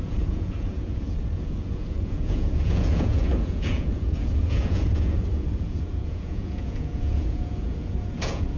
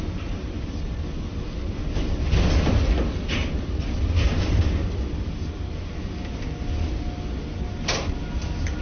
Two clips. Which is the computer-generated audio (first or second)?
first